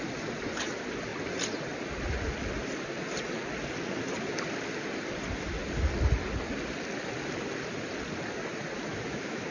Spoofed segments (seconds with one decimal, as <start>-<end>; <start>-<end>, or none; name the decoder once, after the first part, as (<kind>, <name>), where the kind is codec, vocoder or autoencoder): 8.9-9.5 (autoencoder, DAC-VAE)